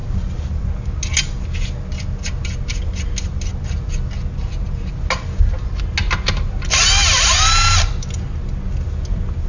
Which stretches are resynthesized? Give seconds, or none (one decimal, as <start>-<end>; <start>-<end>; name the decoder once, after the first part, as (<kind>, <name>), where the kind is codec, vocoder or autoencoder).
none